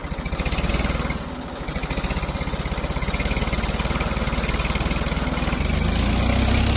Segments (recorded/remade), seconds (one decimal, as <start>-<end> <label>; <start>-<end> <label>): 0.0-0.7 remade; 0.7-6.8 recorded

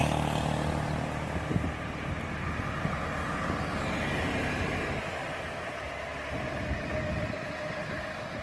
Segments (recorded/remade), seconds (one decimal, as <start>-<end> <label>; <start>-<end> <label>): 0.0-8.4 recorded

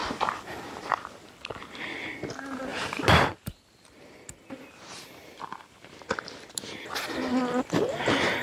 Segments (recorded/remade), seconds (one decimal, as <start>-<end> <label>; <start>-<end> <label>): 0.0-1.2 remade; 1.2-2.7 recorded; 2.7-6.6 remade; 6.6-8.4 recorded

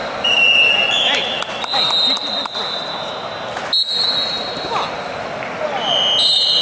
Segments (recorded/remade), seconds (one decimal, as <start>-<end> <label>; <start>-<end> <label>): 0.0-1.5 remade; 1.5-6.6 recorded

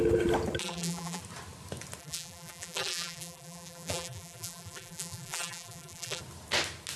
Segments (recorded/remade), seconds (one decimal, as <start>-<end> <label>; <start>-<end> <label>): 0.0-0.6 recorded; 0.6-1.2 remade; 1.2-2.0 recorded; 2.0-6.2 remade; 6.2-7.0 recorded

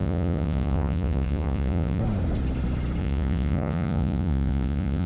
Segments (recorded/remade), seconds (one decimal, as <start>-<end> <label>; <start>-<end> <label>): 0.0-2.0 remade; 2.0-3.0 recorded; 3.0-5.1 remade

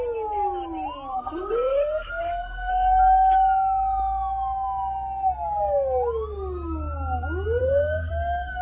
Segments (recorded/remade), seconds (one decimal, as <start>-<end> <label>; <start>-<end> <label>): 0.0-1.1 recorded; 1.1-2.7 remade; 2.7-7.6 recorded; 7.6-8.1 remade; 8.1-8.6 recorded